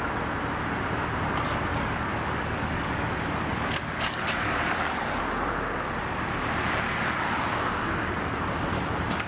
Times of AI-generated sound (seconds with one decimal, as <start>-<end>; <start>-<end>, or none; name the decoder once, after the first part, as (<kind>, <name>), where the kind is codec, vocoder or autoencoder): 1.7-5.2 (codec, DAC)